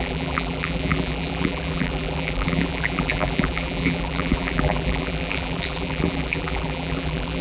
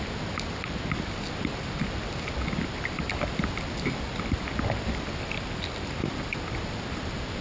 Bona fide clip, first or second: second